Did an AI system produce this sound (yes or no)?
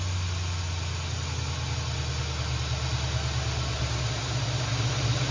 no